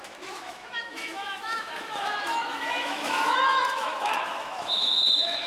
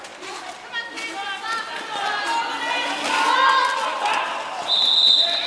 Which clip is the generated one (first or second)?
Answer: first